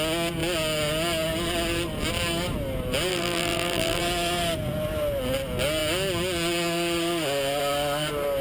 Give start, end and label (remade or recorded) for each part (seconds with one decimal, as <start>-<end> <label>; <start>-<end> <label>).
0.0-3.1 recorded; 3.1-4.0 remade; 4.0-8.4 recorded